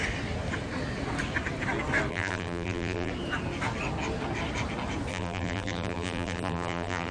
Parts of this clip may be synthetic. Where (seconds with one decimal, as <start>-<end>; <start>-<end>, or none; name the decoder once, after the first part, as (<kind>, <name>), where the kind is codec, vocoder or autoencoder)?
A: 2.1-3.1 (vocoder, BigVGAN v2); 5.1-7.1